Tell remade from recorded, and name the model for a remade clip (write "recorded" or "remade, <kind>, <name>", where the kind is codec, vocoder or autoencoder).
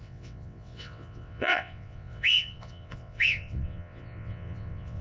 remade, vocoder, WaveNeXt